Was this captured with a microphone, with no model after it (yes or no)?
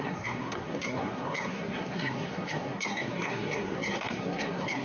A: no